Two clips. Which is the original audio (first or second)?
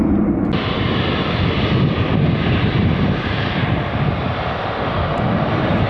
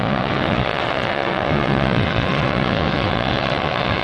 first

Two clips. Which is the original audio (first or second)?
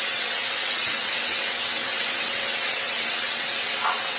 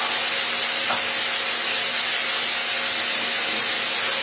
second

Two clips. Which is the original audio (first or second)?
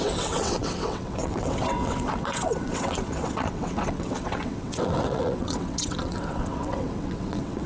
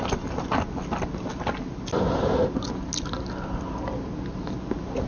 second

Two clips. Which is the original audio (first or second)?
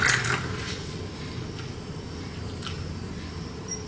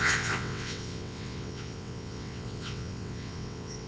first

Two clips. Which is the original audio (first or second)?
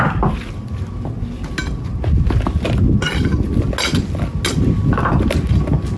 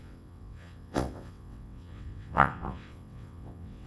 first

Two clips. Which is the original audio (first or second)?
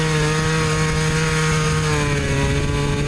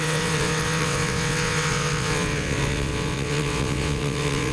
first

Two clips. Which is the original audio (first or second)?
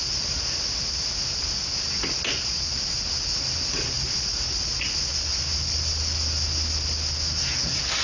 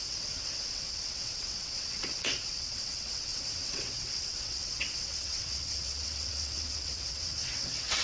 first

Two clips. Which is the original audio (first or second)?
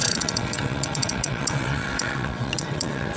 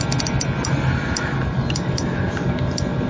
second